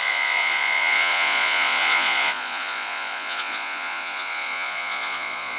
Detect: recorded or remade remade